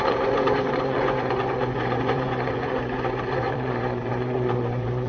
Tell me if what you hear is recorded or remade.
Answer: remade